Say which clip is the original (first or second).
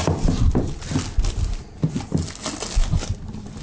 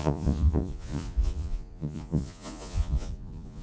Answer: first